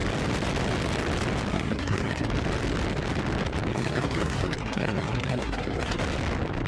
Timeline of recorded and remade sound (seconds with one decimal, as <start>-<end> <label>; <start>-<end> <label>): 0.0-1.5 recorded; 1.5-2.3 remade; 2.3-3.7 recorded; 3.7-6.0 remade; 6.0-6.7 recorded